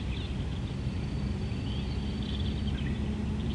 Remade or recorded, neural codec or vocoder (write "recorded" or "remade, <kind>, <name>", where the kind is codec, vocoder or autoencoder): recorded